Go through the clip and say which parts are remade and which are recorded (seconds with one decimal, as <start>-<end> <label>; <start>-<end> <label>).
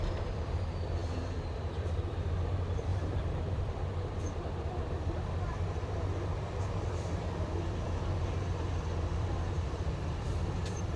0.0-11.0 remade